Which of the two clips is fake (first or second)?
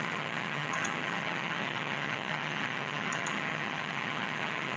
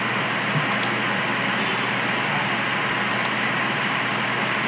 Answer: first